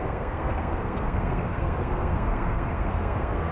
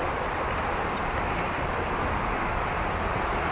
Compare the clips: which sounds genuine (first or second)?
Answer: second